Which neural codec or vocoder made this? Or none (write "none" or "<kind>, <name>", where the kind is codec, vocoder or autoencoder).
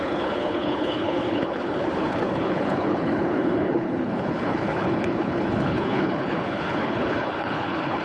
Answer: codec, HILCodec